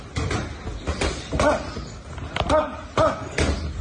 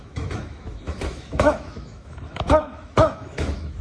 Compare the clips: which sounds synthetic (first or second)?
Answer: second